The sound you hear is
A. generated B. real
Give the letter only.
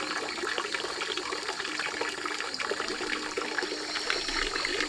B